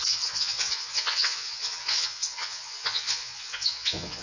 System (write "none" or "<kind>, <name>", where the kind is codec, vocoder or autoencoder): vocoder, Vocos